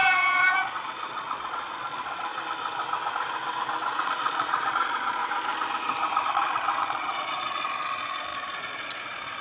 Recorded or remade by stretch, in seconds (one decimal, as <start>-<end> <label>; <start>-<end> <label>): 0.0-2.3 remade; 2.3-4.0 recorded; 4.0-5.2 remade; 5.2-6.3 recorded; 6.3-9.4 remade